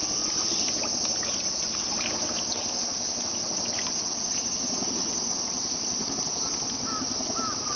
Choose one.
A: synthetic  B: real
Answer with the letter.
B